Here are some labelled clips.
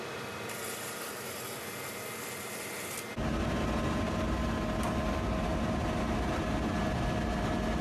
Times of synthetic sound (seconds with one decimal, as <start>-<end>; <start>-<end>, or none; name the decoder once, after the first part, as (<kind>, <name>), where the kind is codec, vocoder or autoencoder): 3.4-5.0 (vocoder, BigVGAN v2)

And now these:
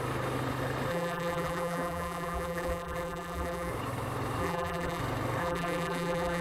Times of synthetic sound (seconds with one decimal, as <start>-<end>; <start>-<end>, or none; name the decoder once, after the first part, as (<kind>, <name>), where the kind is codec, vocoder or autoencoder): 0.9-3.7 (vocoder, BigVGAN v2); 4.4-5.0; 5.4-6.4

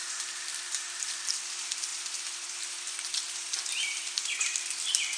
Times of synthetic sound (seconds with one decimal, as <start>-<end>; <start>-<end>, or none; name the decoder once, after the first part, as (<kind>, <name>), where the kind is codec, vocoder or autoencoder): 0.5-1.4 (vocoder, BigVGAN v2); 1.9-4.8

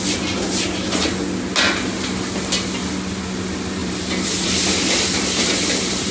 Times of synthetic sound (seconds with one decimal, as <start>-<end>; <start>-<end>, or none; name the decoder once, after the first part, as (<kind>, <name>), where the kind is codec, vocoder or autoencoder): 3.8-6.1 (vocoder, BigVGAN v2)